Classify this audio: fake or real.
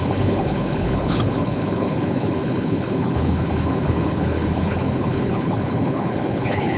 fake